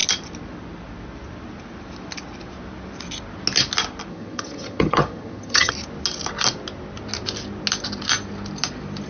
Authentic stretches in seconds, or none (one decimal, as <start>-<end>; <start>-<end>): 0.0-4.1; 5.7-9.1